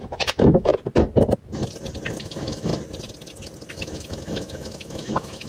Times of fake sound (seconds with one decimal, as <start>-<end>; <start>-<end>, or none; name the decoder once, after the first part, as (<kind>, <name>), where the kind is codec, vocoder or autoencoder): 0.0-0.7 (autoencoder, DAC-VAE); 2.2-2.7; 3.7-5.5

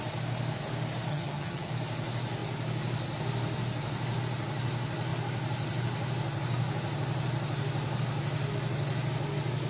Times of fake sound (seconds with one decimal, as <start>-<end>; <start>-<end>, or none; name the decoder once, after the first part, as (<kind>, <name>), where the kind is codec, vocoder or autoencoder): 1.1-1.7 (vocoder, HiFi-GAN)

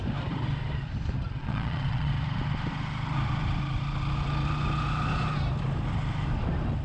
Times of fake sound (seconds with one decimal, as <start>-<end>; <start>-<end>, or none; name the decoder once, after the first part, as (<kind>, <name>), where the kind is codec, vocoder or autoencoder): 1.4-2.1 (vocoder, Vocos)

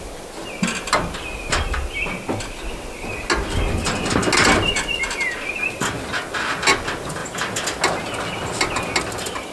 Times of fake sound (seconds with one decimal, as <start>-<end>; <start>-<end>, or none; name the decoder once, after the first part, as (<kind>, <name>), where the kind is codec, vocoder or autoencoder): none

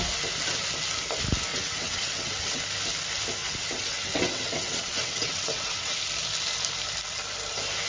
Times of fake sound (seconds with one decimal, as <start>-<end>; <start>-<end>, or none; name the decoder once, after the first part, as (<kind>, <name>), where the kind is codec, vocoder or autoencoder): 1.5-2.6 (vocoder, WaveNeXt); 3.4-6.0

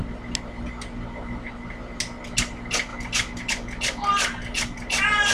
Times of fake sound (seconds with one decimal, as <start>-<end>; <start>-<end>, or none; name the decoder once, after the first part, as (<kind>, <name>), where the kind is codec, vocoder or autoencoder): none